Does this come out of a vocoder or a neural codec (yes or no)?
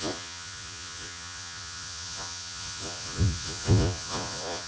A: yes